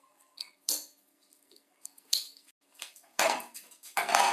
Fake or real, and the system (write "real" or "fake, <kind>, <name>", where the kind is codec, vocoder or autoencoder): fake, codec, SNAC